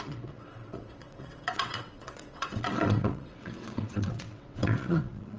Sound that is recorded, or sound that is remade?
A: remade